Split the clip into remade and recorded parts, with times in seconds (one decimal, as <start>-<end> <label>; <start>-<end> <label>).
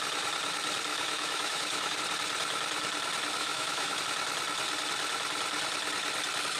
0.0-0.9 recorded; 0.9-2.0 remade; 2.0-3.4 recorded; 3.4-4.0 remade; 4.0-6.6 recorded